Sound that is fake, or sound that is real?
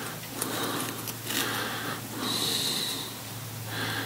real